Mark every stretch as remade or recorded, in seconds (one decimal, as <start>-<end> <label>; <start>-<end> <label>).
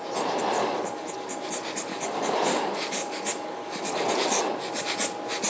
0.0-0.6 recorded; 0.6-1.5 remade; 1.5-1.9 recorded; 1.9-4.4 remade; 4.4-5.5 recorded